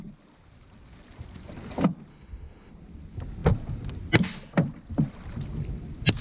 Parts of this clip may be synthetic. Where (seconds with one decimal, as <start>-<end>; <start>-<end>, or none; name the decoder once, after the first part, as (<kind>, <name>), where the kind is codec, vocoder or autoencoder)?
2.1-2.7 (autoencoder, DAC-VAE)